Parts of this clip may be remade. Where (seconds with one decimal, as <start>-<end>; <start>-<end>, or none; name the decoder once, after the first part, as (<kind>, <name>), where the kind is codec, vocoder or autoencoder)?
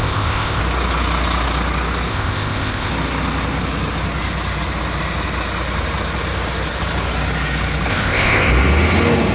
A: 0.0-0.6 (codec, ZipCodec); 2.1-2.9; 7.9-8.5